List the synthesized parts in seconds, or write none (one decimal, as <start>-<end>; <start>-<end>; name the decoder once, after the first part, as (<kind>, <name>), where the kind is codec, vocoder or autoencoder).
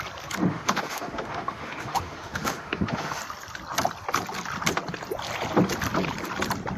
0.5-3.2 (autoencoder, DAC-VAE)